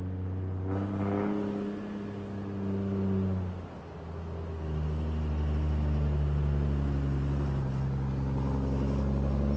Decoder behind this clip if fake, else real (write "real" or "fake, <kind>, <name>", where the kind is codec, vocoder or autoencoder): real